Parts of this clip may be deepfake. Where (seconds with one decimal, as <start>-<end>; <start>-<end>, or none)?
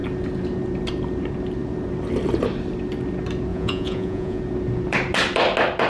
3.5-4.4